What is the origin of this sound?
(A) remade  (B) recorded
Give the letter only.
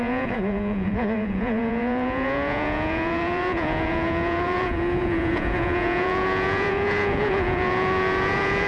A